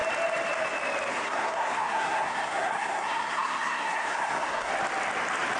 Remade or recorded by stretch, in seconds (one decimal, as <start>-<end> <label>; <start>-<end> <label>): 0.0-1.1 recorded; 1.1-4.7 remade; 4.7-5.6 recorded